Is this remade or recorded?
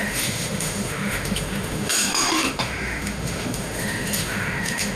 remade